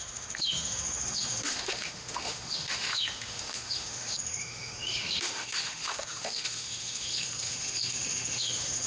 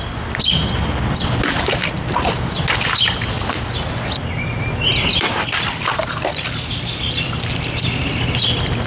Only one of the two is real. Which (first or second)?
second